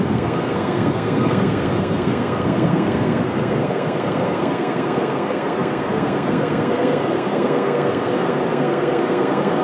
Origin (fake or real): fake